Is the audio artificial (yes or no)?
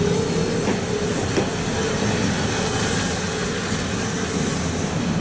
no